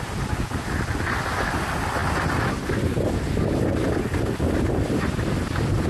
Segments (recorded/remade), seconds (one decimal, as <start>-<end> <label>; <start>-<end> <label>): 0.0-5.9 recorded